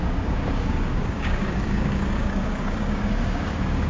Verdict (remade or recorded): remade